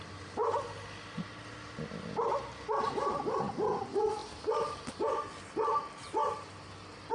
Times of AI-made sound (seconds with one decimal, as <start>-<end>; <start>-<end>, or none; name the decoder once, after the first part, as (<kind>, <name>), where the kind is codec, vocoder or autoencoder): none